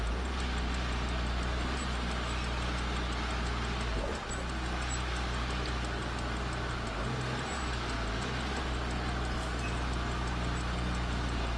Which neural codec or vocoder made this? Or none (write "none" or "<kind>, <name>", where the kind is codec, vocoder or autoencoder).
none